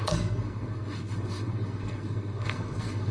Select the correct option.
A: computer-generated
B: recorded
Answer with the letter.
A